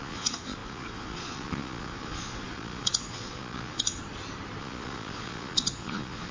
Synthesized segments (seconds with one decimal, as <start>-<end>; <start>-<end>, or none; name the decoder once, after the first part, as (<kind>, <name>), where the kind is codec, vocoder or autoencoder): 0.0-4.0 (vocoder, Vocos); 4.6-6.3